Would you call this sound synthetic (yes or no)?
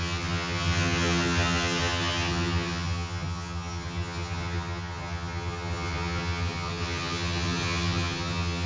yes